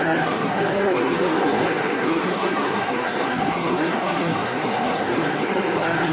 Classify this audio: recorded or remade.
remade